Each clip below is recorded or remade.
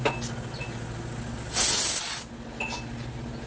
recorded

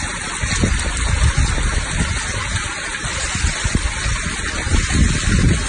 recorded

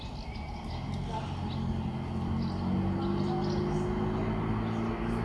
recorded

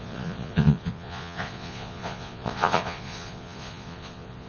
remade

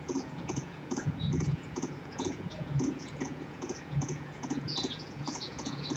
remade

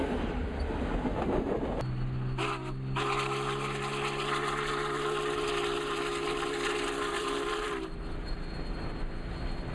recorded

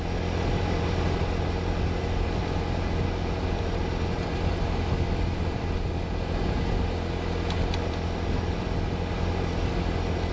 recorded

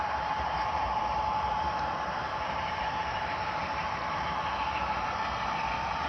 remade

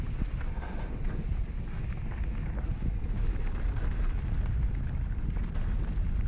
recorded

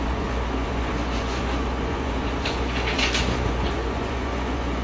remade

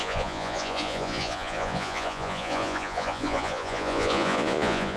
remade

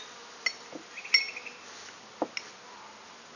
recorded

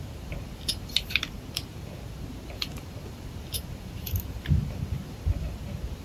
remade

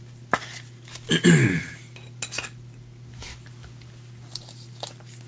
recorded